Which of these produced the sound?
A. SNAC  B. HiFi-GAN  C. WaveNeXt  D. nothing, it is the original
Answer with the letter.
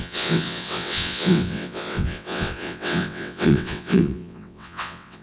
C